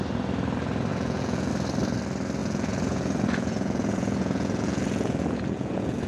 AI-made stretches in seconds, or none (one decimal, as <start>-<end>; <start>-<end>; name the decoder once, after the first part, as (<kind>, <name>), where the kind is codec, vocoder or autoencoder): 0.9-1.5 (vocoder, Vocos); 2.4-6.1